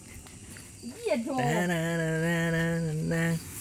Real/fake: real